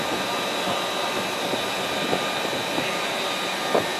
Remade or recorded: recorded